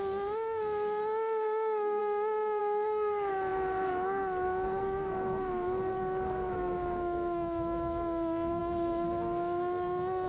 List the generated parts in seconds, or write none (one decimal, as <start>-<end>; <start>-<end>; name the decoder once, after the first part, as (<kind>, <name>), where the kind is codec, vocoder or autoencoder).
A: 0.0-2.0 (codec, SNAC); 2.6-10.3